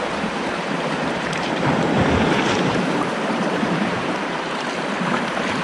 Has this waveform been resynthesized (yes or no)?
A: yes